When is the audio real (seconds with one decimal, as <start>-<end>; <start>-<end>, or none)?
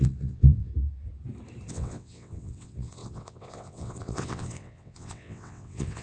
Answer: 0.7-1.7